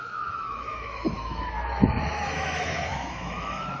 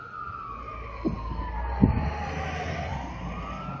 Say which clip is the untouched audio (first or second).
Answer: second